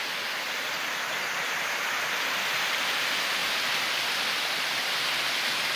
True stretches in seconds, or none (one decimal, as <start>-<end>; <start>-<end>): 0.0-5.8